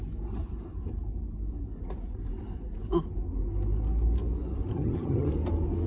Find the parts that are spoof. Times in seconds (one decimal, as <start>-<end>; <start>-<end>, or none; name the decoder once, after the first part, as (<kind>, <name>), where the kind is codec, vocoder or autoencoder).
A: 4.7-5.3 (vocoder, HiFi-GAN)